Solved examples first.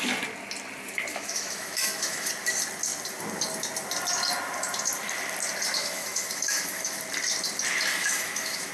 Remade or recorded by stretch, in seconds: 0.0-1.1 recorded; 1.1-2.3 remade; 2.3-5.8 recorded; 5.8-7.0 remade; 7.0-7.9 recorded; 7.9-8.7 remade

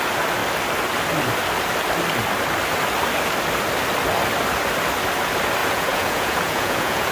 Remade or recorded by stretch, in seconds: 0.0-5.6 recorded; 5.6-7.1 remade

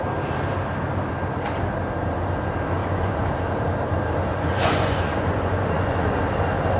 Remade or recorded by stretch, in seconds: 0.0-2.8 recorded; 2.8-3.3 remade; 3.3-4.3 recorded; 4.3-6.2 remade; 6.2-6.8 recorded

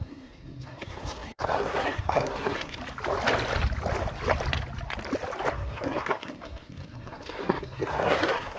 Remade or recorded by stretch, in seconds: 0.0-2.8 remade; 2.8-5.5 recorded; 5.5-8.6 remade

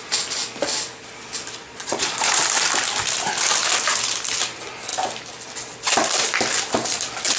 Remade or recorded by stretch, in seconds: 0.0-1.6 recorded; 1.6-2.4 remade; 2.4-7.4 recorded